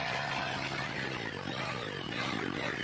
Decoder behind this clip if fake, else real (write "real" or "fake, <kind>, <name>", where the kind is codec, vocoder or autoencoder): real